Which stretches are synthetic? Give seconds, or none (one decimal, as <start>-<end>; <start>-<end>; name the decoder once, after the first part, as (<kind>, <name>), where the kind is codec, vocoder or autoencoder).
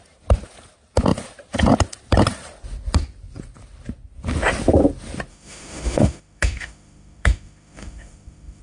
5.3-8.6 (autoencoder, DAC-VAE)